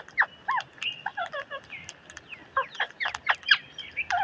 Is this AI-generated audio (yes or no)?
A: no